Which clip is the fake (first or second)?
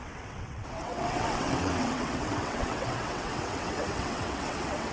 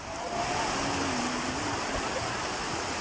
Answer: first